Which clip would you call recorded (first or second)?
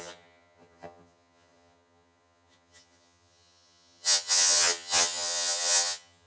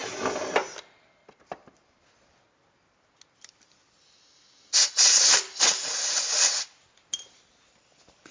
second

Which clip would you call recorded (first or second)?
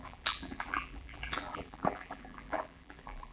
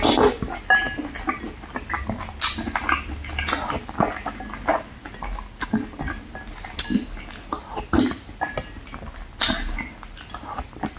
second